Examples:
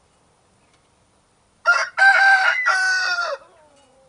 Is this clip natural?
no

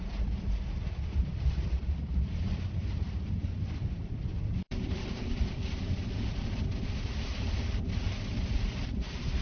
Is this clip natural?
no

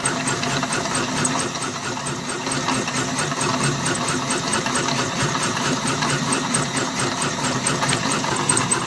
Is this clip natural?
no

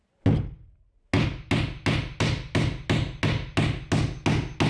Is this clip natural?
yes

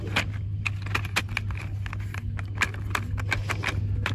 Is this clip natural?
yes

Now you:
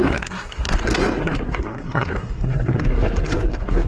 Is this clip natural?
no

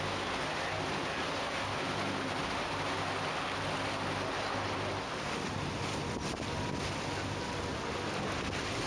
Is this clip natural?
yes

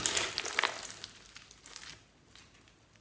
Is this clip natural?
yes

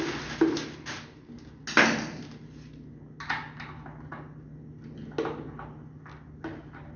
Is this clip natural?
yes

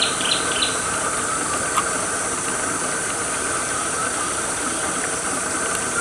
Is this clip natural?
no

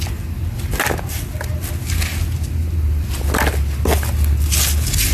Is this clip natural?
yes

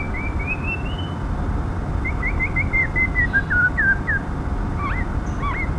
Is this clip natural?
yes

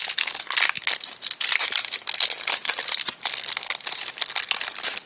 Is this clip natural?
yes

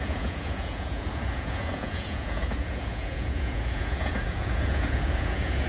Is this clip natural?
no